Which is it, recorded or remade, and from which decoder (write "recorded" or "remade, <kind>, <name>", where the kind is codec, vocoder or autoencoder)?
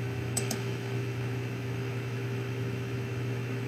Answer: remade, autoencoder, DAC-VAE